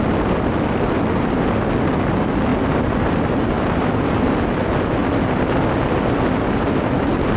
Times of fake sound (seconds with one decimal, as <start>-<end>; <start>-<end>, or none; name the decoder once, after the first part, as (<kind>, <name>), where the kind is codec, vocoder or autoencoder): none